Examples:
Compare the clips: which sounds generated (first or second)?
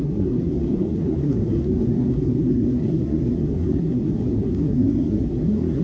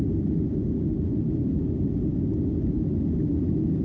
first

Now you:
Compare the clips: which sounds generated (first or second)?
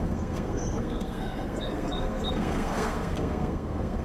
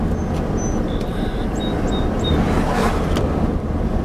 first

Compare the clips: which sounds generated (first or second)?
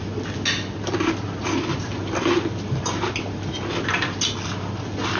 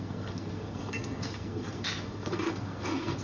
second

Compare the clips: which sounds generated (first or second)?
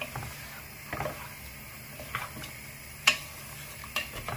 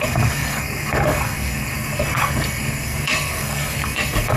second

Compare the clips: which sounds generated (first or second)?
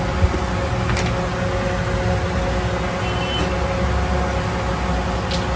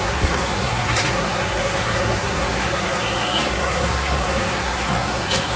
second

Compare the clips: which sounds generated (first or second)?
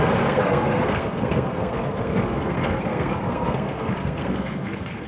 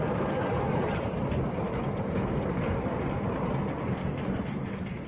first